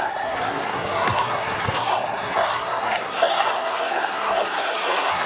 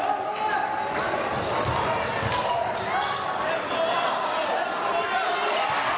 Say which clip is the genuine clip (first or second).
second